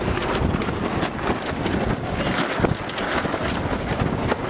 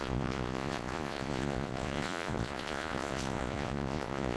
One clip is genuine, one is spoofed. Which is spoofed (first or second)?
second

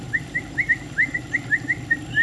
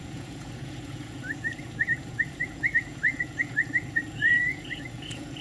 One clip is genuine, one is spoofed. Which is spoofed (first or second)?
second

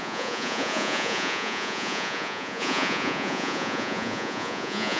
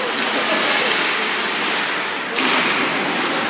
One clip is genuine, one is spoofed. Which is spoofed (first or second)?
first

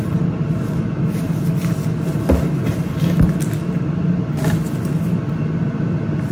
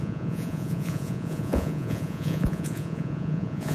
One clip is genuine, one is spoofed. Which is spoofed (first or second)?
second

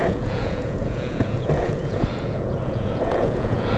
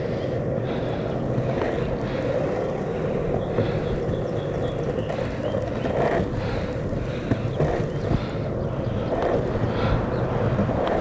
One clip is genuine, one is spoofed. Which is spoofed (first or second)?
first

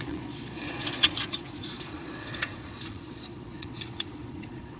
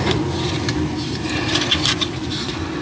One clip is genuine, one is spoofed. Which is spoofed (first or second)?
first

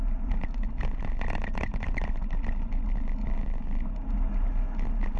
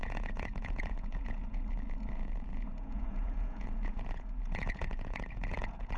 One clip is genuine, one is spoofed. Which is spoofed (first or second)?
second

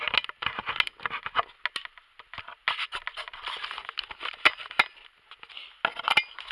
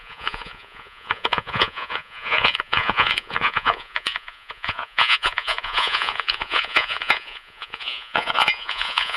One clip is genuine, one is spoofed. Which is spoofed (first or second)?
second